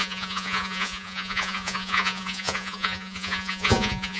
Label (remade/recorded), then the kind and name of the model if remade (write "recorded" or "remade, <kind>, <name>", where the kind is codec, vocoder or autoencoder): remade, vocoder, Vocos